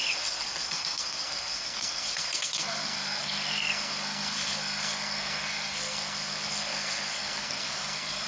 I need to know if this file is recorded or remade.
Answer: remade